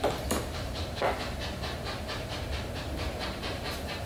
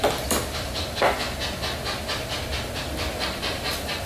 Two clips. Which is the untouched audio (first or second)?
second